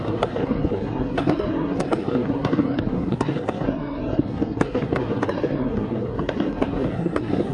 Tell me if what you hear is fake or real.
fake